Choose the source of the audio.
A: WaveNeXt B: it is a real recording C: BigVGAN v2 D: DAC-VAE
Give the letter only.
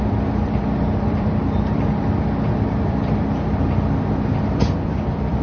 C